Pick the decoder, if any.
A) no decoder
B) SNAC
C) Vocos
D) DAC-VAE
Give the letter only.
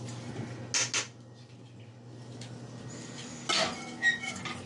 A